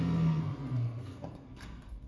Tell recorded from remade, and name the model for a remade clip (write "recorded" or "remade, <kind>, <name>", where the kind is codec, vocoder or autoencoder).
remade, codec, SNAC